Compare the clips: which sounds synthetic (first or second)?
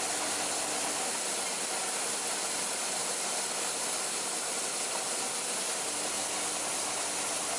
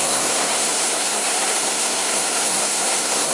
second